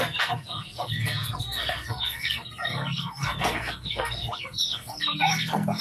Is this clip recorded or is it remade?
remade